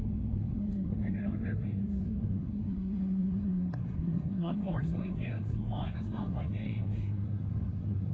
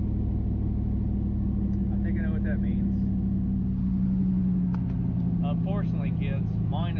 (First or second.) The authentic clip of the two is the second